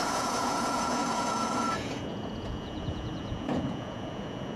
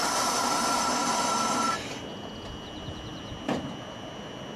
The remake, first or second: first